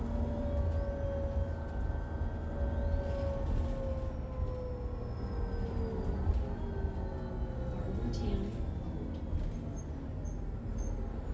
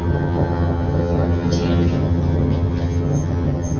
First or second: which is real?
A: first